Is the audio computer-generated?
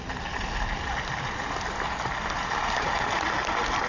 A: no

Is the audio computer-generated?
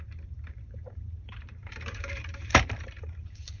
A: yes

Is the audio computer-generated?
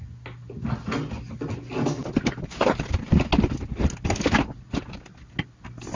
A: no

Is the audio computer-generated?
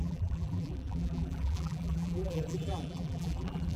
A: yes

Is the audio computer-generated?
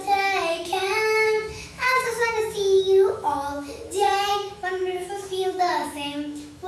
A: yes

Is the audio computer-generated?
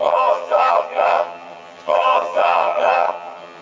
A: yes